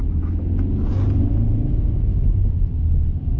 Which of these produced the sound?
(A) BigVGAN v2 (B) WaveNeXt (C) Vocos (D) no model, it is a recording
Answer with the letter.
D